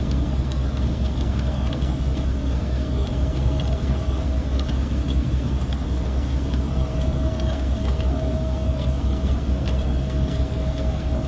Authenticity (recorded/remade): remade